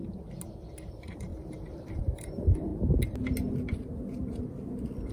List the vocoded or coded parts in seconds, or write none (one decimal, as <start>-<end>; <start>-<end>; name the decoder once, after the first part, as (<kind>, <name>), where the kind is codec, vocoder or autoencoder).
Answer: 0.9-2.7 (vocoder, BigVGAN v2)

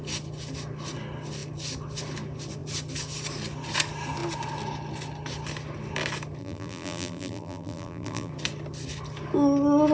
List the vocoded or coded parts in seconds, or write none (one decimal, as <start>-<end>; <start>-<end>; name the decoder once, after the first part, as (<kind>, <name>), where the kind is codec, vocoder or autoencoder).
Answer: 6.4-8.3 (vocoder, BigVGAN v2)

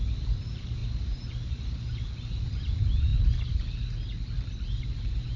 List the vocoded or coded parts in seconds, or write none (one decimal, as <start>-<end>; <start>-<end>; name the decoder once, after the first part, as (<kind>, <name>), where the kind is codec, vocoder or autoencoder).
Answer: 0.0-3.1 (vocoder, BigVGAN v2); 4.8-5.4

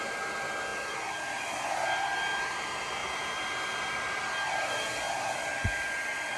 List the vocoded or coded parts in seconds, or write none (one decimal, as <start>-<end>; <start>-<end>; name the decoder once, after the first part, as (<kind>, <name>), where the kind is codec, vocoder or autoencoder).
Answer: 3.0-4.2 (vocoder, BigVGAN v2)

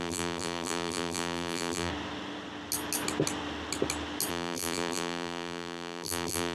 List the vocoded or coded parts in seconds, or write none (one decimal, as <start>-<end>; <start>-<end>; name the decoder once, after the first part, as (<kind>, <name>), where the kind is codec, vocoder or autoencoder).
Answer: 0.0-1.9 (vocoder, BigVGAN v2); 4.3-6.5

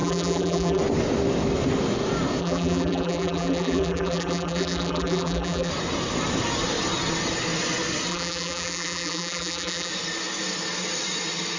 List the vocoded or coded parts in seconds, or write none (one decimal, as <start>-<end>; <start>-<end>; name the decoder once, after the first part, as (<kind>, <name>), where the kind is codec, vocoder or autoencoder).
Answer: 0.0-0.8 (vocoder, BigVGAN v2); 2.4-5.7; 8.1-9.9

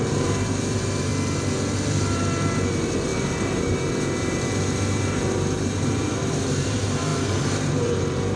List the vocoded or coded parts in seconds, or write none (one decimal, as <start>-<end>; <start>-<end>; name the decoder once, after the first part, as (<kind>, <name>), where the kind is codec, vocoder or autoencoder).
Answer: 0.0-1.1 (vocoder, BigVGAN v2); 1.7-8.4